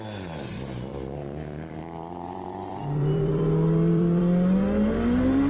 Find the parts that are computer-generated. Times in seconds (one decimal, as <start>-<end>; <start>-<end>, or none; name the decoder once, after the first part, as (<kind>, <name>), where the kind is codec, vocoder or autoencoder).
0.9-4.2 (vocoder, BigVGAN v2)